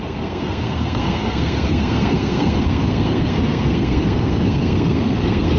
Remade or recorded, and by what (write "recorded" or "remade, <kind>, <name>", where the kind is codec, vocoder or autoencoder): remade, codec, SNAC